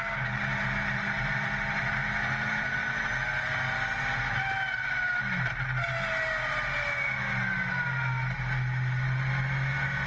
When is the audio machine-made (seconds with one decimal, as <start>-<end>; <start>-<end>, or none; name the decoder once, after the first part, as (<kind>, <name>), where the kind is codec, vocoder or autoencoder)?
none